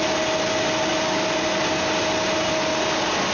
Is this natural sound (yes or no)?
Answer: yes